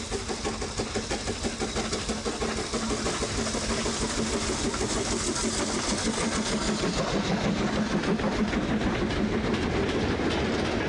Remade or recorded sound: recorded